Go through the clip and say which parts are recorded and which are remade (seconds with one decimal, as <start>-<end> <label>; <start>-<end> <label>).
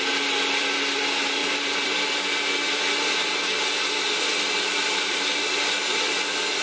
0.0-1.4 recorded; 1.4-2.2 remade; 2.2-4.3 recorded; 4.3-5.3 remade; 5.3-6.6 recorded